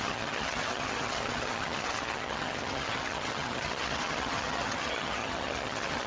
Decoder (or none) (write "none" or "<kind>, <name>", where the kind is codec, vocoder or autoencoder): vocoder, HiFi-GAN